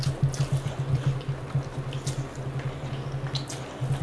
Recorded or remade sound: recorded